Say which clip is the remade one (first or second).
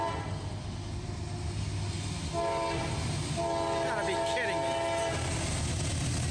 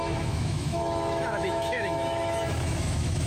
second